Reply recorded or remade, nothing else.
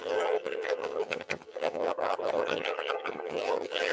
remade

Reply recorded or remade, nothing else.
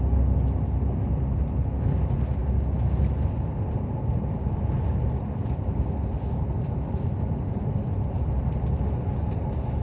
recorded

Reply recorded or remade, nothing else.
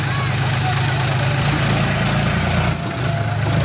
recorded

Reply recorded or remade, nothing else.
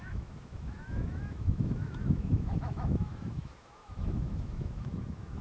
remade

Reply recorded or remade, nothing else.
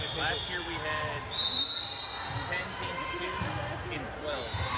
recorded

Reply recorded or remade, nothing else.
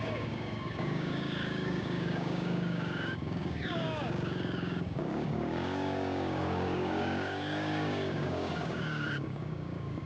remade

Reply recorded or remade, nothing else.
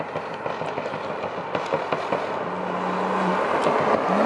recorded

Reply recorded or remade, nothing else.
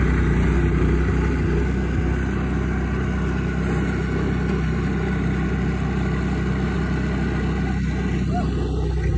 recorded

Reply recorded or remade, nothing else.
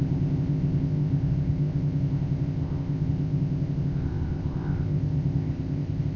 remade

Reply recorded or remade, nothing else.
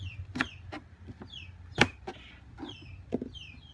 recorded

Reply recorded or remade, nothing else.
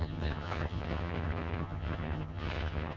remade